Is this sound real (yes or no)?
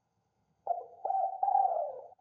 no